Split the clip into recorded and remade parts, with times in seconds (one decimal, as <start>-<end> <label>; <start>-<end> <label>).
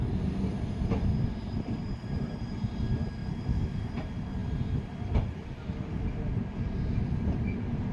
0.0-0.5 recorded; 0.5-2.7 remade; 2.7-3.2 recorded; 3.2-3.9 remade; 3.9-4.4 recorded; 4.4-6.1 remade; 6.1-7.9 recorded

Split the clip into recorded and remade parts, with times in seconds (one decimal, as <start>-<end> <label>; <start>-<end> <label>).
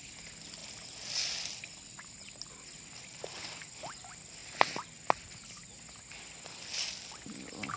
0.0-7.8 recorded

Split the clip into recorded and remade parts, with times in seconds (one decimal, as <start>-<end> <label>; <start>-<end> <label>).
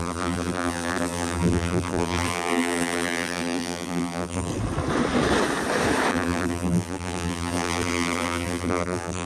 0.0-4.5 remade; 4.5-6.1 recorded; 6.1-9.2 remade